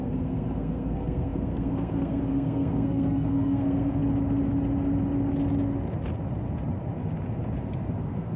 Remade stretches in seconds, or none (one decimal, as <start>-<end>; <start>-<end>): 0.0-4.0; 8.0-8.4